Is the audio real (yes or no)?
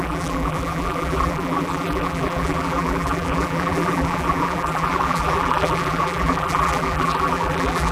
no